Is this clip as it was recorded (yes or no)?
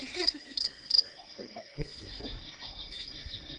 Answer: no